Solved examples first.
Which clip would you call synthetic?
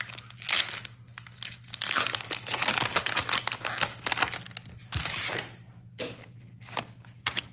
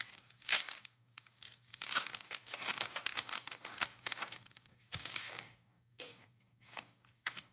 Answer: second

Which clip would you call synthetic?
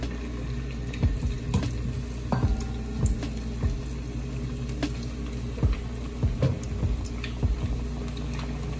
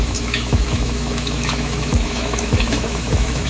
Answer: second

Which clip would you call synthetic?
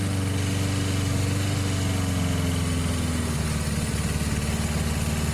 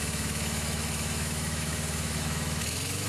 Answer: second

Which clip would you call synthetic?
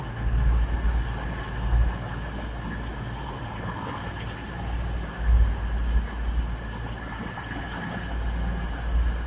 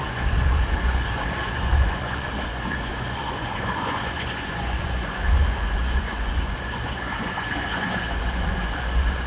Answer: second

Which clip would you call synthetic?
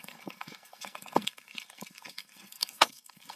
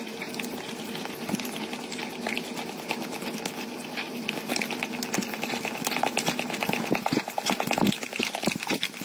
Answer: first